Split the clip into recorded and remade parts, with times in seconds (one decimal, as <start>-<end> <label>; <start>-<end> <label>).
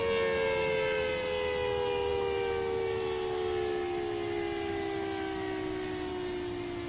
0.0-6.9 recorded